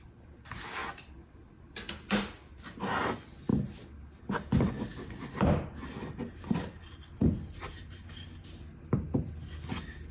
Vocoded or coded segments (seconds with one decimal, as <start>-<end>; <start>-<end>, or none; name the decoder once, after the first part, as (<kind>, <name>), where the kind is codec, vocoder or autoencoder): 0.8-2.8 (vocoder, BigVGAN v2)